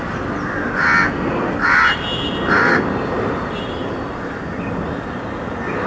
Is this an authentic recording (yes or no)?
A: yes